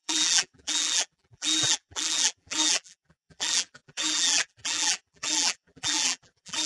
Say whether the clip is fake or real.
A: fake